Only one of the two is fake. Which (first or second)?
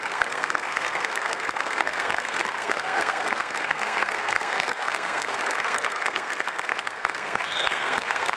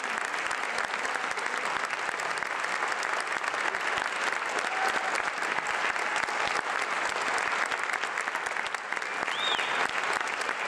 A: first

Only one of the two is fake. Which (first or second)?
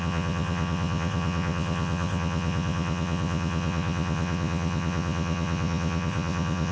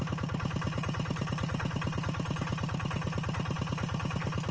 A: first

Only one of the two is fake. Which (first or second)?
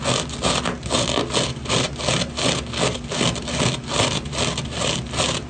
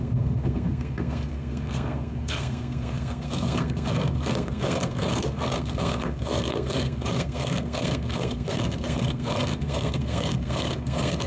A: second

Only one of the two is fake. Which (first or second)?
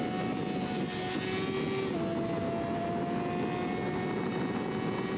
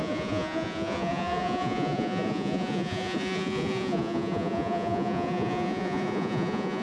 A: second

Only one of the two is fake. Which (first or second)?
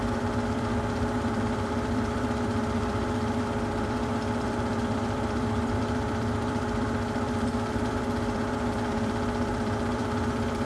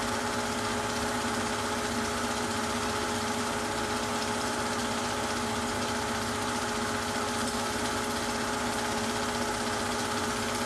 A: first